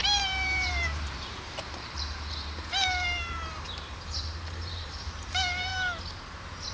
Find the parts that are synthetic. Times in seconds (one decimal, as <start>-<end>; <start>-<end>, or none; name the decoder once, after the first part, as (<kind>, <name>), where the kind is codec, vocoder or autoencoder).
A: 0.0-5.7 (vocoder, BigVGAN v2)